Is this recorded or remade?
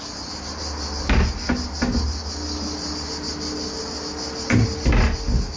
recorded